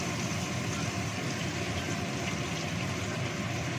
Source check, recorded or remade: recorded